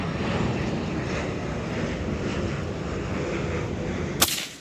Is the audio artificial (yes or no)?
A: no